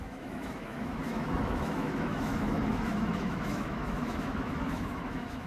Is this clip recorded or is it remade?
remade